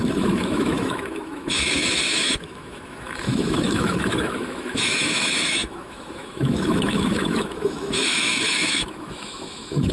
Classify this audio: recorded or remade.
remade